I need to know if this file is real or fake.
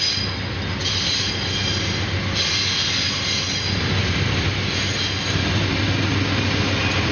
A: real